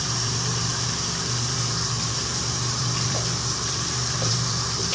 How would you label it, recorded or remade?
remade